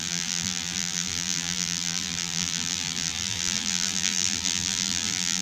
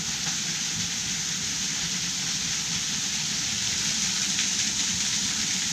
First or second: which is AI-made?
first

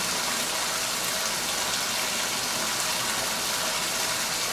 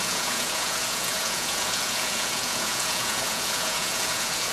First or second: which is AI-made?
second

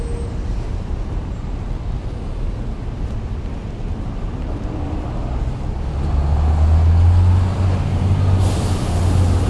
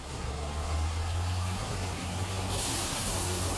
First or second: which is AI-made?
second